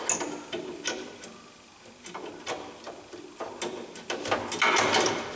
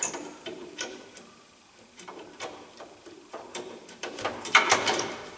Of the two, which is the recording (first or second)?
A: first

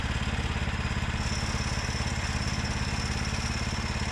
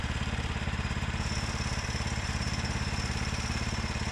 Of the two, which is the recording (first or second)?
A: first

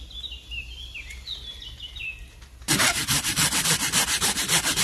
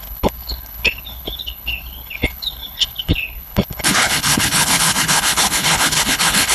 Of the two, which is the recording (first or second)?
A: first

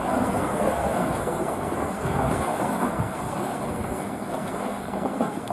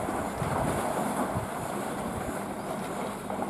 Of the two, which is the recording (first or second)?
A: second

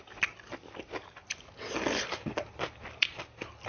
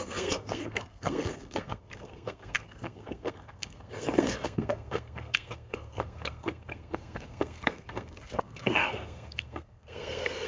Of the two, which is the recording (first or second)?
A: first